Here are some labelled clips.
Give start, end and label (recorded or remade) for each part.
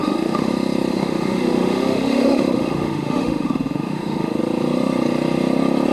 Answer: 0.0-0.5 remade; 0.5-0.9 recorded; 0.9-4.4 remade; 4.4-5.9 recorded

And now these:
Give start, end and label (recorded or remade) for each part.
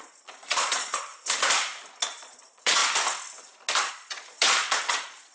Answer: 0.0-1.1 remade; 1.1-2.1 recorded; 2.1-2.8 remade; 2.8-3.9 recorded; 3.9-5.3 remade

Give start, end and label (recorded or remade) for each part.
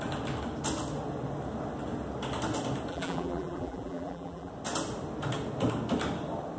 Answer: 0.0-2.9 recorded; 2.9-4.5 remade; 4.5-6.6 recorded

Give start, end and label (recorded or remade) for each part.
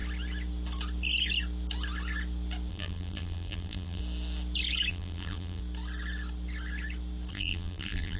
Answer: 0.0-2.7 recorded; 2.7-4.0 remade; 4.0-4.9 recorded; 4.9-5.6 remade; 5.6-7.3 recorded; 7.3-8.2 remade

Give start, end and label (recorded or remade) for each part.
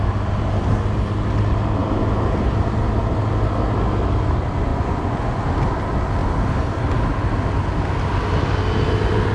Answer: 0.0-4.7 recorded; 4.7-5.5 remade; 5.5-9.3 recorded